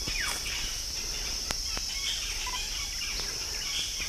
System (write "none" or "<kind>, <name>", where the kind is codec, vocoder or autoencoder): none